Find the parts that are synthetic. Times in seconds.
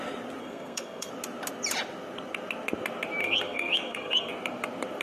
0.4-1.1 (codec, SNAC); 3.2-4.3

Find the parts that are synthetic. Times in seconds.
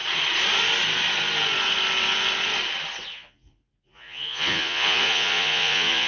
3.1-6.1 (vocoder, Vocos)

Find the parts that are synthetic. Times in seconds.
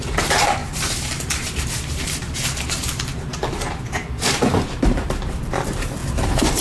0.0-6.6 (vocoder, BigVGAN v2)